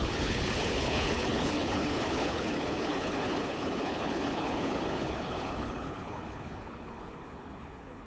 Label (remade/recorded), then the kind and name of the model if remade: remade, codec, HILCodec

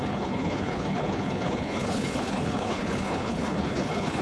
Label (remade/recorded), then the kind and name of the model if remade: remade, codec, HILCodec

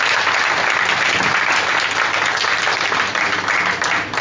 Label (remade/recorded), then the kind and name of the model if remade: recorded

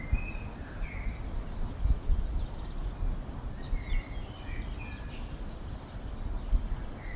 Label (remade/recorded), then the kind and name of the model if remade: recorded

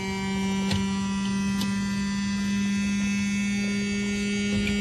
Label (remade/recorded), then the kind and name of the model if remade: recorded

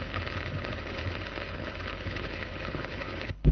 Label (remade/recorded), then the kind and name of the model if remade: remade, codec, HILCodec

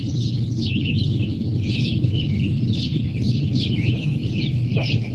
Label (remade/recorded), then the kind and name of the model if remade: remade, codec, HILCodec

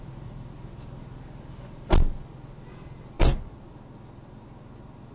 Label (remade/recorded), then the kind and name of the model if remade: recorded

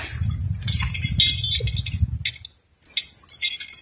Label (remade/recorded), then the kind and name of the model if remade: recorded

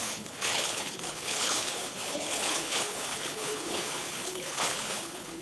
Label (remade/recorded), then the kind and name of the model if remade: remade, codec, HILCodec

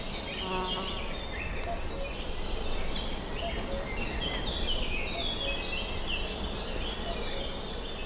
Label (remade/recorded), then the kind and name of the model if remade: recorded